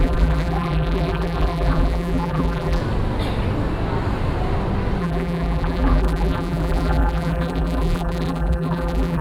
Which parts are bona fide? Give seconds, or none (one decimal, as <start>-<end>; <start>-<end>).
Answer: 2.8-5.0